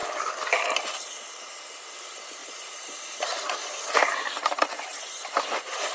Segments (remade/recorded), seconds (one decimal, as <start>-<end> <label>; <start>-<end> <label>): 0.0-2.4 recorded; 2.4-5.9 remade

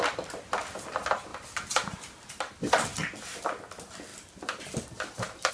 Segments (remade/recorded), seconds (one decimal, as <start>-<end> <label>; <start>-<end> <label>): 0.0-1.3 recorded; 1.3-2.4 remade; 2.4-4.1 recorded; 4.1-5.5 remade